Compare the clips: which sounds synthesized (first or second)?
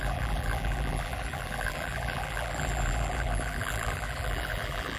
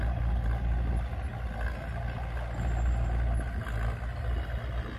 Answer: first